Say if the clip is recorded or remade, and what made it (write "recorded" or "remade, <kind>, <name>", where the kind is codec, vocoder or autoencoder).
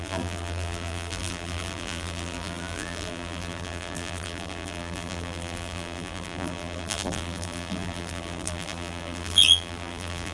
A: remade, vocoder, BigVGAN v2